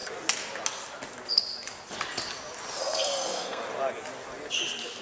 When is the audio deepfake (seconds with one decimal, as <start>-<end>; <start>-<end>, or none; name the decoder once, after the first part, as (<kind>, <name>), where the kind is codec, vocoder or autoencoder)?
2.8-3.6 (codec, SNAC)